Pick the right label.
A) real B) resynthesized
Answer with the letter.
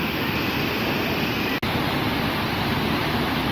A